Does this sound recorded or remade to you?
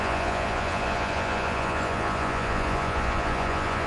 remade